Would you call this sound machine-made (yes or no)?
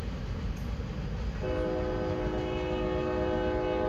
no